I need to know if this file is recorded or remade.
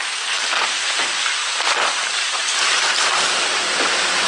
recorded